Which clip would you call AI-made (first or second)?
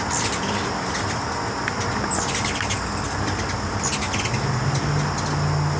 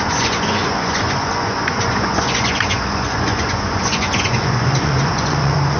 second